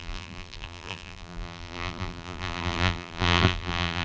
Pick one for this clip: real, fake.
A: fake